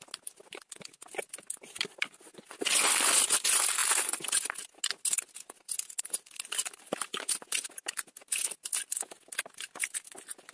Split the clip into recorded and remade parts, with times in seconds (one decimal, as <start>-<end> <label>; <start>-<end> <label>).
0.0-10.5 recorded